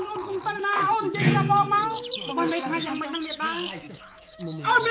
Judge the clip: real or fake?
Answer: fake